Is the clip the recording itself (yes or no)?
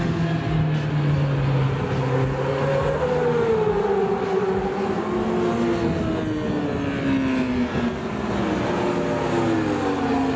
yes